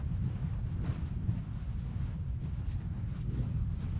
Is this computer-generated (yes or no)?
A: no